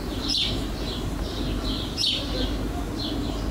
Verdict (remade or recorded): recorded